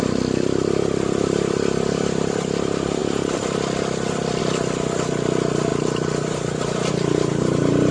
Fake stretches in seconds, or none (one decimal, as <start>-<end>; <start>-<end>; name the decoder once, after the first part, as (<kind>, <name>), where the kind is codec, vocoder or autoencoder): none